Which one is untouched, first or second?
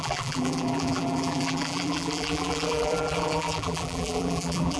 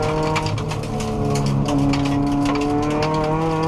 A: second